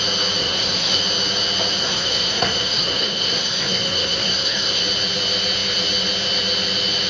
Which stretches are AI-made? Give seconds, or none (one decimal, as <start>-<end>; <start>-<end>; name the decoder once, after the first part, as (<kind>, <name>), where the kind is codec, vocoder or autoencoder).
0.4-1.0 (codec, SNAC); 1.8-4.8